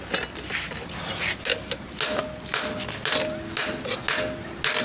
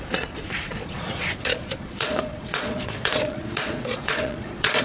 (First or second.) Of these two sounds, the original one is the first